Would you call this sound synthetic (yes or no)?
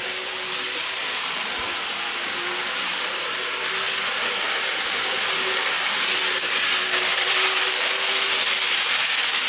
no